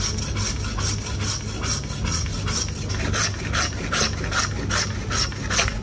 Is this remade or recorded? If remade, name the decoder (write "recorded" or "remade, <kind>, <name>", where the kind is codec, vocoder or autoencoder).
recorded